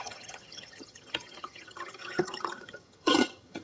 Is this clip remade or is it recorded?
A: remade